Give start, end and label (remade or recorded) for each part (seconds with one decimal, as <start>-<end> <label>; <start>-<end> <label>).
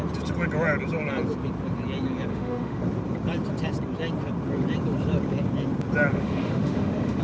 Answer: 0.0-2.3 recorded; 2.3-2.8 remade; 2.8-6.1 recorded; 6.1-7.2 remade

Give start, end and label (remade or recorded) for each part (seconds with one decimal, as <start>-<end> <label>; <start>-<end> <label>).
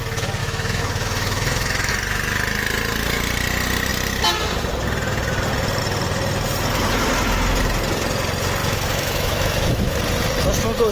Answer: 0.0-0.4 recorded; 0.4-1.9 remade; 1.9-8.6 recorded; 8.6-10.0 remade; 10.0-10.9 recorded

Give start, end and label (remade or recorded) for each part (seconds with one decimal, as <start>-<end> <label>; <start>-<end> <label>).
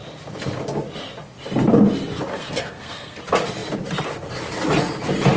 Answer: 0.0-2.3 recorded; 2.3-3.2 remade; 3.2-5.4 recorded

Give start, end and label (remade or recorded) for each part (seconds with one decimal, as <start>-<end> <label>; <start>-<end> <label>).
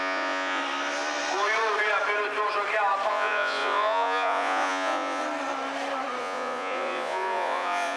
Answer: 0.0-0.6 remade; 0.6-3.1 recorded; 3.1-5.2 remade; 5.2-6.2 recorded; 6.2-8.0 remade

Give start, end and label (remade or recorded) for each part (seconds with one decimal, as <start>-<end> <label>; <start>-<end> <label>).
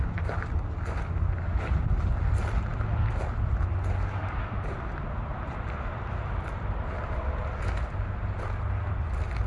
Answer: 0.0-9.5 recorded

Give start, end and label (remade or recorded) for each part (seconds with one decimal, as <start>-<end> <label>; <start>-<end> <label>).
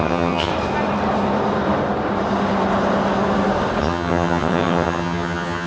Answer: 0.0-0.5 remade; 0.5-3.8 recorded; 3.8-5.7 remade